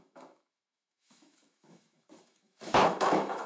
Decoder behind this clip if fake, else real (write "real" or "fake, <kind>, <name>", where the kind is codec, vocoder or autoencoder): fake, autoencoder, DAC-VAE